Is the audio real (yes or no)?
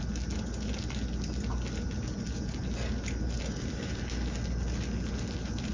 yes